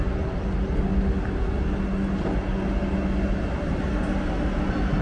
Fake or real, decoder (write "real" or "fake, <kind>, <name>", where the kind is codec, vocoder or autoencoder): real